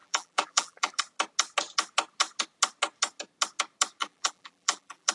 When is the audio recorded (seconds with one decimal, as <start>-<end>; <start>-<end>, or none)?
1.0-4.0